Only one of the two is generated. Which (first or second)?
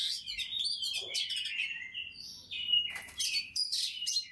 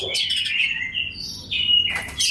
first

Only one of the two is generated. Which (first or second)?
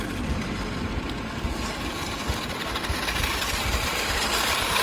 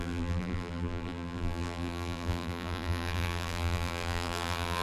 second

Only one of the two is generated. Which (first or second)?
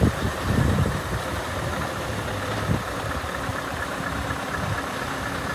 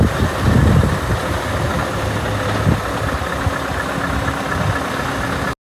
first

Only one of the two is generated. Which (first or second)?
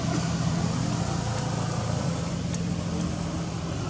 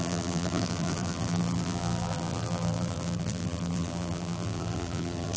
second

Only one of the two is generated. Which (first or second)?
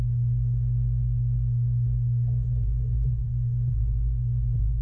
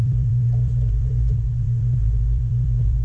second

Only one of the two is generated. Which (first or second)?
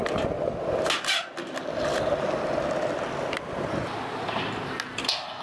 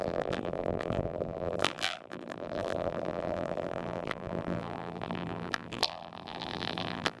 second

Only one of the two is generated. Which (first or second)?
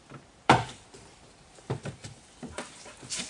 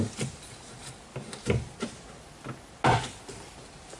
first